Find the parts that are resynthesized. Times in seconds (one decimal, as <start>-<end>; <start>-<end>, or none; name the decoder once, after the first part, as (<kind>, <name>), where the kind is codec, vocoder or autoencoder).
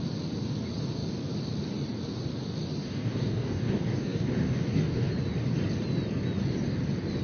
2.8-5.1 (codec, DAC)